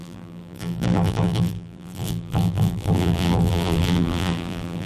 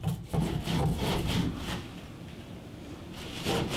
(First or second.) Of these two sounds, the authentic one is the second